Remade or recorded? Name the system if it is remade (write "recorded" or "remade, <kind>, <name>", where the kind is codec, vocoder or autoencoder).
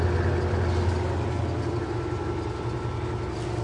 recorded